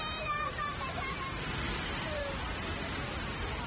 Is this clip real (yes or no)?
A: yes